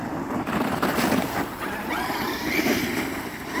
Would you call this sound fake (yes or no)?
yes